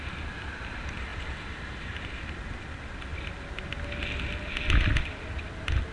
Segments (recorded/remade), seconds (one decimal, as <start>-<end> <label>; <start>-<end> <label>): 0.0-5.9 recorded